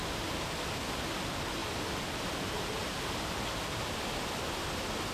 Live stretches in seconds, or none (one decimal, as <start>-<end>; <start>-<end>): 0.0-1.6; 2.9-5.1

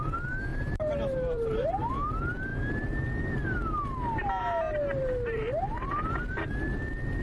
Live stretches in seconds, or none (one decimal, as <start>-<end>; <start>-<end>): 0.0-0.5; 1.9-5.0; 6.5-7.2